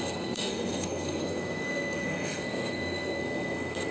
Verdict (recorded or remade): remade